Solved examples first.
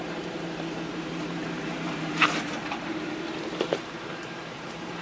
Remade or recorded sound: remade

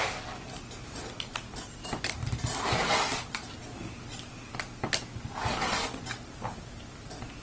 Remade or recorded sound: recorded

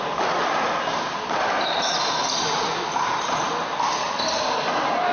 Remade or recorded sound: recorded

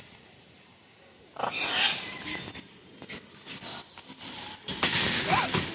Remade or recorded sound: recorded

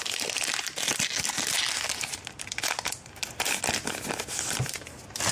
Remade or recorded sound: recorded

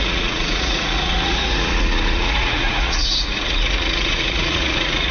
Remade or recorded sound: remade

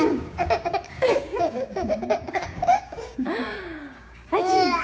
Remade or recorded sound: remade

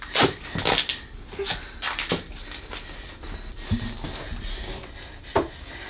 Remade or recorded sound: recorded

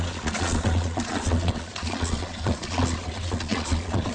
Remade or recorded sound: remade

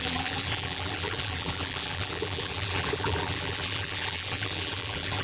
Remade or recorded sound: remade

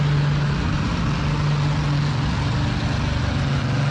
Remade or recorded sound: recorded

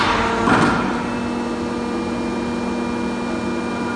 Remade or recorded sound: recorded